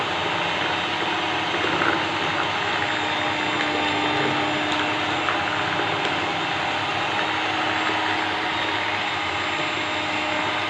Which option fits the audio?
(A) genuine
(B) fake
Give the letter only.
A